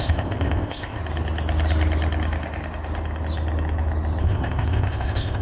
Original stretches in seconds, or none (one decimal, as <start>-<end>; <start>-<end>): 1.0-4.2